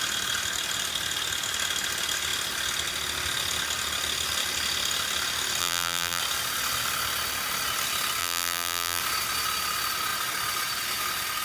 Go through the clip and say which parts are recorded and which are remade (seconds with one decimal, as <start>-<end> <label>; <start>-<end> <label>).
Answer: 0.0-5.6 recorded; 5.6-6.2 remade; 6.2-8.2 recorded; 8.2-9.0 remade; 9.0-11.4 recorded

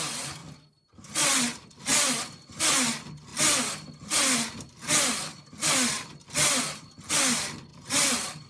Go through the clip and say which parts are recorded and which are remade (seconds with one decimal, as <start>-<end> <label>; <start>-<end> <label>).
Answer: 0.0-7.7 recorded; 7.7-8.5 remade